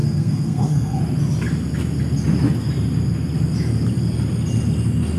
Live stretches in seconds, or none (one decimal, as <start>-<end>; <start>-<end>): 1.0-5.2